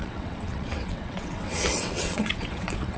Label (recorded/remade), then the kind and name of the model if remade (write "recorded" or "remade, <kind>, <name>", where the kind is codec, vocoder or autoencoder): remade, vocoder, WaveNeXt